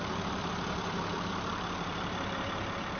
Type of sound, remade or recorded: remade